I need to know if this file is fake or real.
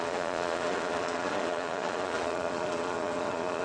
fake